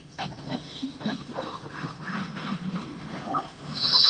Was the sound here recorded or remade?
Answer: remade